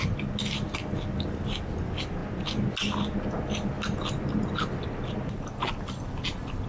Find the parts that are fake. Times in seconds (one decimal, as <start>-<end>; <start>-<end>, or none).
none